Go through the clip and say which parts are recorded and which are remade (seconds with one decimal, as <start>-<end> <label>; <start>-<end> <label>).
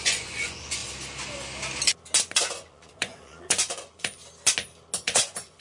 0.0-0.8 remade; 0.8-2.2 recorded; 2.2-4.2 remade; 4.2-5.0 recorded; 5.0-5.6 remade